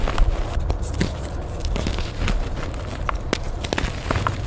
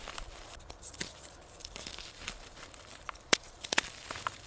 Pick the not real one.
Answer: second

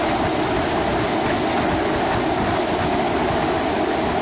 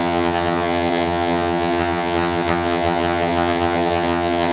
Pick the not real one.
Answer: second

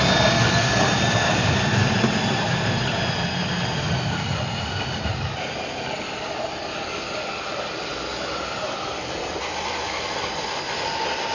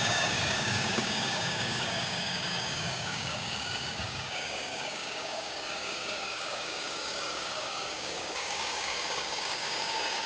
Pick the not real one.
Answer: second